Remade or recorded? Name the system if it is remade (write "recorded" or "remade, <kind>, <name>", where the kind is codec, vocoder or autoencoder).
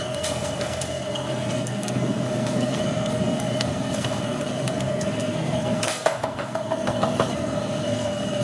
remade, codec, SNAC